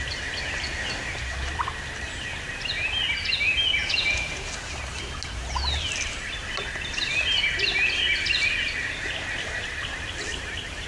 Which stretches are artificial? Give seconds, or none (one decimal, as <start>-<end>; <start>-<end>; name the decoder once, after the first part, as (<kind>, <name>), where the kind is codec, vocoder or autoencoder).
3.8-4.4 (vocoder, Vocos)